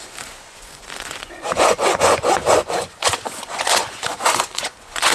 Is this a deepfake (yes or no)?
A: yes